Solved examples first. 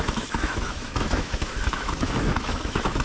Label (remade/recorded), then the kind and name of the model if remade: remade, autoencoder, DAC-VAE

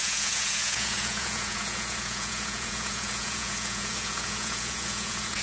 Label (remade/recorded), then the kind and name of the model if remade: remade, vocoder, Vocos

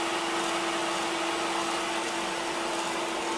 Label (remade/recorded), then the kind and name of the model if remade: recorded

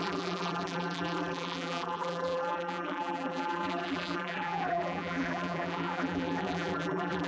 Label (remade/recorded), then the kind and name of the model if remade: remade, vocoder, BigVGAN v2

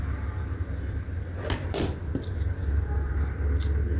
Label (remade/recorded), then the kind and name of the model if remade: recorded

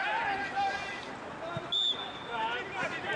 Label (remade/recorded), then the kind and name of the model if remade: recorded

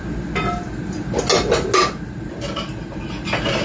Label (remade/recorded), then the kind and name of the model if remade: recorded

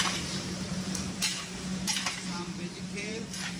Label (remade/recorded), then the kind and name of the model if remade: remade, vocoder, BigVGAN v2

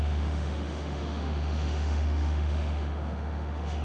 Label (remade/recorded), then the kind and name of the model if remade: remade, autoencoder, DAC-VAE